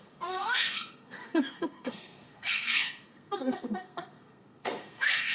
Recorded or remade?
remade